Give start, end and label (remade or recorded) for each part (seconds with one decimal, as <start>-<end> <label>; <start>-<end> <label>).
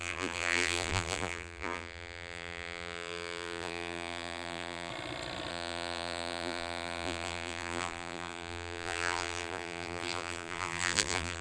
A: 0.0-4.9 remade; 4.9-5.5 recorded; 5.5-11.4 remade